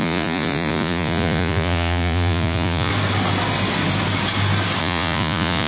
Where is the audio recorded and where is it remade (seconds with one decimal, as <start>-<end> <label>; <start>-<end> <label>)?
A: 0.0-2.9 remade; 2.9-4.8 recorded; 4.8-5.7 remade